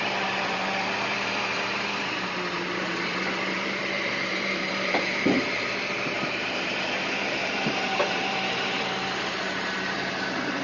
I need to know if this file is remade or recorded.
remade